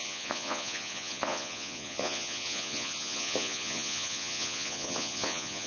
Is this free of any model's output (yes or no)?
no